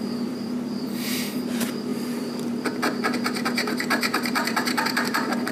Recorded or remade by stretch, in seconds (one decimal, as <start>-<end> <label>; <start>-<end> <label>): 0.0-5.5 remade